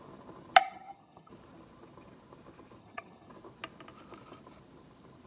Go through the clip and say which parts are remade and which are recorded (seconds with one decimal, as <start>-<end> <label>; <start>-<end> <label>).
0.0-0.6 recorded; 0.6-1.3 remade; 1.3-2.8 recorded; 2.8-3.3 remade; 3.3-5.3 recorded